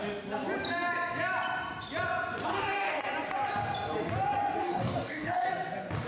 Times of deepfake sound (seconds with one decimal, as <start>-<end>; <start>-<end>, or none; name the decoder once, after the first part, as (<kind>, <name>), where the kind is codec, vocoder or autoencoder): 2.5-3.0 (codec, DAC); 4.6-5.5